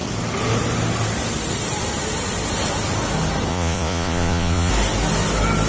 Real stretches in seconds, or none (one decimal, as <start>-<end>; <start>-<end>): 0.0-3.5; 4.7-5.7